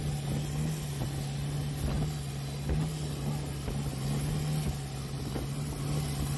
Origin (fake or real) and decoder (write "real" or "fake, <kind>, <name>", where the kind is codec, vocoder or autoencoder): real